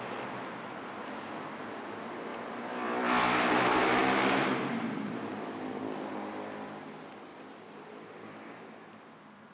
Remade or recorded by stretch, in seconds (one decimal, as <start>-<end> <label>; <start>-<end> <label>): 0.0-2.3 recorded; 2.3-3.5 remade; 3.5-4.0 recorded; 4.0-5.7 remade; 5.7-7.3 recorded; 7.3-8.6 remade; 8.6-9.5 recorded